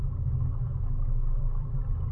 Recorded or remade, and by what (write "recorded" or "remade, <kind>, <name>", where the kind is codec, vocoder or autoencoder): recorded